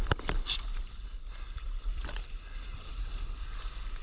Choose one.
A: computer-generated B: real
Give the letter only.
A